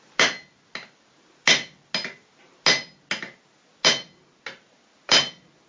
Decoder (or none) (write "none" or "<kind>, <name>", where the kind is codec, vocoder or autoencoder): none